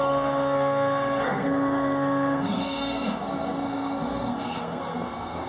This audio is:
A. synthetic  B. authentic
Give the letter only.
A